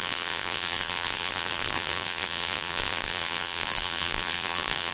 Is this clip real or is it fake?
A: fake